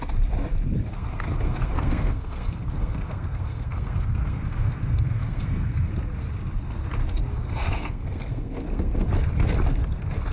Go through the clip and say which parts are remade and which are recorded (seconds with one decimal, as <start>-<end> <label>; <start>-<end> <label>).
0.0-0.9 recorded; 0.9-5.9 remade; 5.9-7.3 recorded; 7.3-9.1 remade; 9.1-10.3 recorded